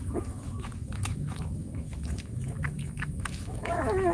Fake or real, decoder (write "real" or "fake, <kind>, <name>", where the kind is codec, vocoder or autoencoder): fake, autoencoder, DAC-VAE